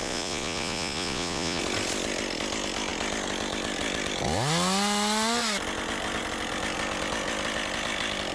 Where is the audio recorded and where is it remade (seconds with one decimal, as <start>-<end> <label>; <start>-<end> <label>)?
0.0-1.6 remade; 1.6-8.3 recorded